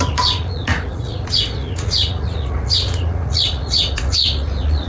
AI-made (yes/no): yes